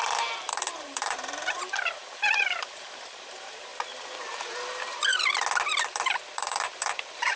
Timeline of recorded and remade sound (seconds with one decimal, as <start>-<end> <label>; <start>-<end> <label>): 0.0-3.7 remade; 3.7-4.2 recorded; 4.2-5.1 remade; 5.1-5.8 recorded; 5.8-7.4 remade